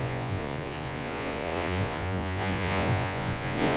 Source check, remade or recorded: remade